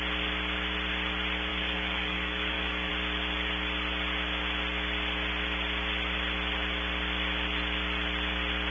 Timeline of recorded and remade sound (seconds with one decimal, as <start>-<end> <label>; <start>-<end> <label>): 0.0-1.5 recorded; 1.5-2.9 remade; 2.9-8.7 recorded